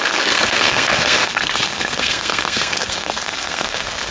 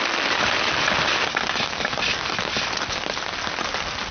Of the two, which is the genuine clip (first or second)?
second